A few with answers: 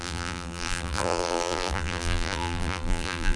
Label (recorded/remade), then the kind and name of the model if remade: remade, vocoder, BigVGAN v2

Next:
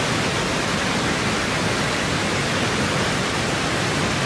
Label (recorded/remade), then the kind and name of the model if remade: recorded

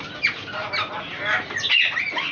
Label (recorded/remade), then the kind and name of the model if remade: recorded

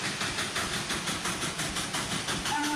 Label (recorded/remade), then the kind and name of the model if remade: recorded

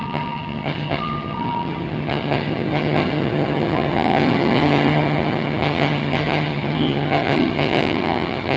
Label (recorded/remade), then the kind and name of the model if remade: remade, vocoder, HiFi-GAN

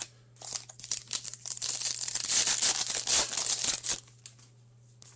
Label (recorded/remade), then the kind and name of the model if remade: recorded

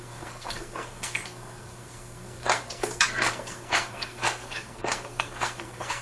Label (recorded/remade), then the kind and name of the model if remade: remade, codec, SNAC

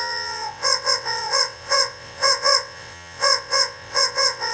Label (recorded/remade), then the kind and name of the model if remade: remade, vocoder, WaveNeXt